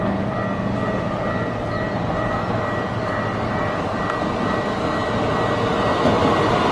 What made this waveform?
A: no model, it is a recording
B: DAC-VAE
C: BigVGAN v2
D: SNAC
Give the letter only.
A